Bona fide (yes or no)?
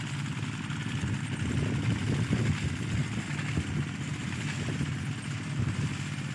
yes